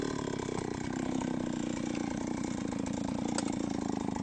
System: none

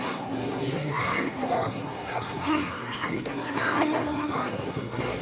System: codec, SNAC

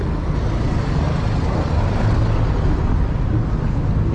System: none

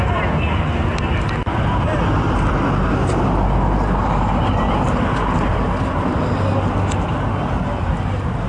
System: none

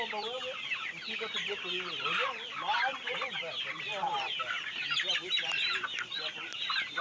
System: vocoder, BigVGAN v2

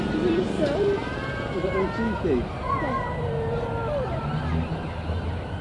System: none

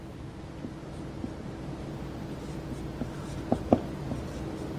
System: none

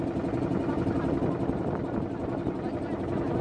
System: none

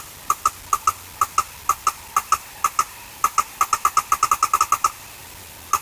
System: none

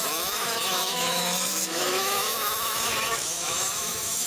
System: autoencoder, DAC-VAE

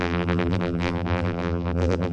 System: vocoder, BigVGAN v2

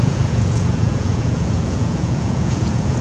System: vocoder, Vocos